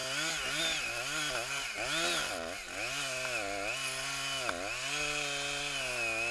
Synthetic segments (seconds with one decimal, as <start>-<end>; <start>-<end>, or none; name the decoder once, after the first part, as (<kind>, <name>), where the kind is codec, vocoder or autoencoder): none